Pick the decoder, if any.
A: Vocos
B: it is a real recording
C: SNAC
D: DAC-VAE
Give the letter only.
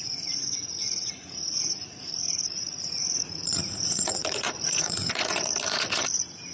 A